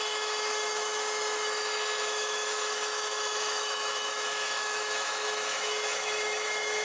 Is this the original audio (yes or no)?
no